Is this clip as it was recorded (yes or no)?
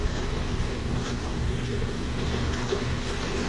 no